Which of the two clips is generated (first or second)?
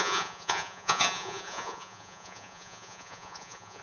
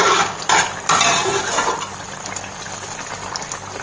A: first